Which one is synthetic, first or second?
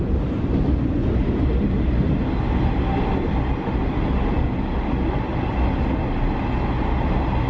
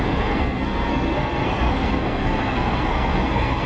second